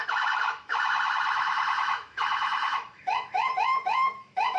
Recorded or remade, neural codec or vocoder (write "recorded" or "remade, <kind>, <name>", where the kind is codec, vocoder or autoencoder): remade, autoencoder, DAC-VAE